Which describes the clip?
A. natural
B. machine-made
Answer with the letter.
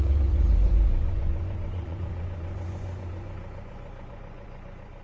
B